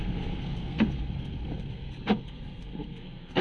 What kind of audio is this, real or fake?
fake